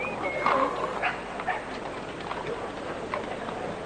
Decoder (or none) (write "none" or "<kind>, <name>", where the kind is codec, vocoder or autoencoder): none